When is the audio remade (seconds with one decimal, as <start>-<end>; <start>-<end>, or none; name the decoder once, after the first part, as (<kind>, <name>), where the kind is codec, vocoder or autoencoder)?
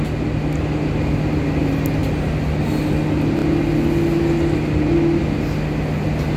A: none